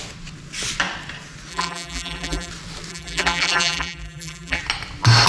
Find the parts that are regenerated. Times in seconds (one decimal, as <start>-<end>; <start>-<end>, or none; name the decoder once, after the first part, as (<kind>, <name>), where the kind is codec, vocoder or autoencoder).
1.5-2.5 (vocoder, BigVGAN v2); 2.9-4.6